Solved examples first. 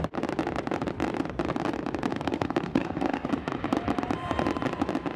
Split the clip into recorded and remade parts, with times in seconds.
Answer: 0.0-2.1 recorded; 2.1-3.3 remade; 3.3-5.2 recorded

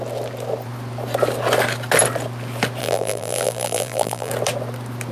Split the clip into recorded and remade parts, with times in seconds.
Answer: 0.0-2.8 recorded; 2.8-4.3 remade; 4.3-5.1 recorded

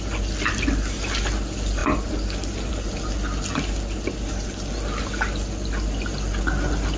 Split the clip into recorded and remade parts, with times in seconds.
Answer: 0.0-7.0 recorded

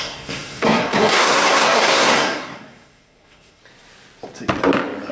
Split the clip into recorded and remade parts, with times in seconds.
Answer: 0.0-3.6 remade; 3.6-5.1 recorded

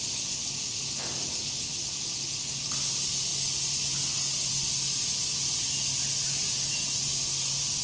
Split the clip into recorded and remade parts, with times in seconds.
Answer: 0.0-7.8 recorded

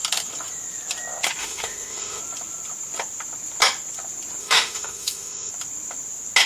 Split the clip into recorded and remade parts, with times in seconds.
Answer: 0.0-1.4 recorded; 1.4-2.2 remade; 2.2-4.4 recorded; 4.4-5.5 remade; 5.5-6.5 recorded